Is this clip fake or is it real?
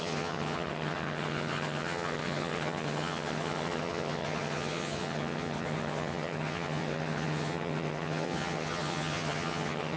fake